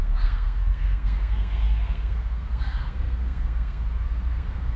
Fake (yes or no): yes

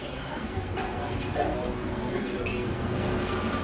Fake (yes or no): yes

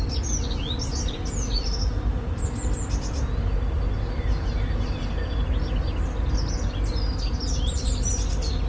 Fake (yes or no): no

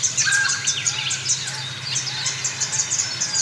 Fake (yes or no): no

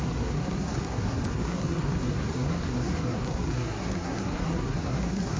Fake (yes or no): yes